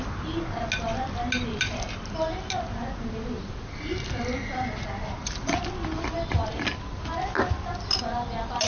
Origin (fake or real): real